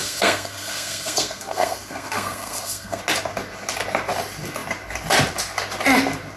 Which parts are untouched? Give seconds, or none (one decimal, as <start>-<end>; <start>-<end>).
3.0-6.4